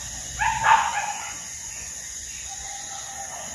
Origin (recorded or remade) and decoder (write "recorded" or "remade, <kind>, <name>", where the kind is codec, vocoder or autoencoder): remade, vocoder, Vocos